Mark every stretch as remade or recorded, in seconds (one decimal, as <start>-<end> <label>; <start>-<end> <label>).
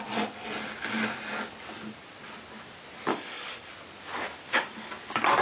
0.0-3.1 recorded; 3.1-3.7 remade; 3.7-4.4 recorded; 4.4-4.9 remade; 4.9-5.4 recorded